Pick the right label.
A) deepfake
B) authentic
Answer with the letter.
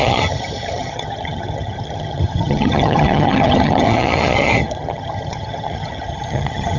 A